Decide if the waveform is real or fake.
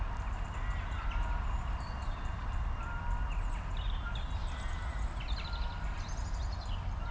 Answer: real